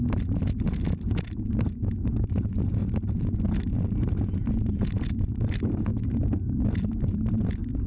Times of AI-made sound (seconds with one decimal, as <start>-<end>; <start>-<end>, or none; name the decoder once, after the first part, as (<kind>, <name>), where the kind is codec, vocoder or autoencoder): none